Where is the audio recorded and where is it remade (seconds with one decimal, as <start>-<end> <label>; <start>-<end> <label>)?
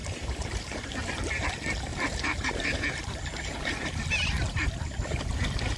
0.0-1.1 remade; 1.1-1.9 recorded; 1.9-4.0 remade; 4.0-5.8 recorded